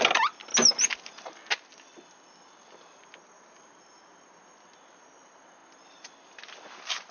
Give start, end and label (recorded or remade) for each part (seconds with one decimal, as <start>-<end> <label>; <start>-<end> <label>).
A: 0.0-7.1 recorded